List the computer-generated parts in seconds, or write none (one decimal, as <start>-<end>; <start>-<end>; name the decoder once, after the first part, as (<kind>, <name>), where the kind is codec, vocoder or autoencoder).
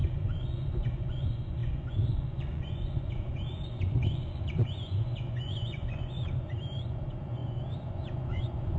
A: 0.0-8.8 (vocoder, Vocos)